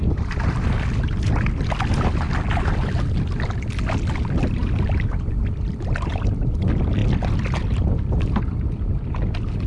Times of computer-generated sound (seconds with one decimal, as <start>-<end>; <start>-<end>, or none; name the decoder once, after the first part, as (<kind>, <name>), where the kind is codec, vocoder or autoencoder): none